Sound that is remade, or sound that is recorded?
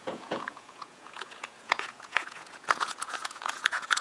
remade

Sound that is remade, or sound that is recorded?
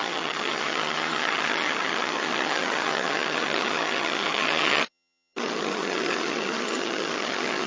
remade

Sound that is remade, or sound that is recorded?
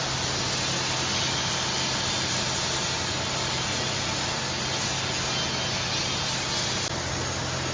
recorded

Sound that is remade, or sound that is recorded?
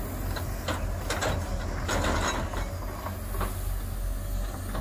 recorded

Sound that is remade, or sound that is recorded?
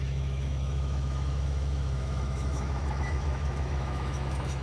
remade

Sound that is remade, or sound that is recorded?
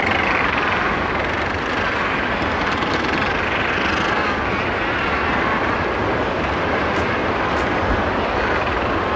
recorded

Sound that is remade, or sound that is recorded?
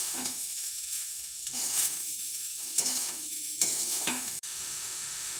remade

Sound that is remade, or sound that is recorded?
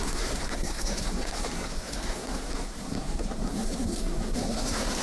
remade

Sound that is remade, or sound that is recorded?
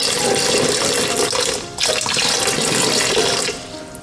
recorded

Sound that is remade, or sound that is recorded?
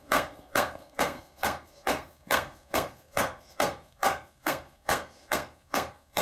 remade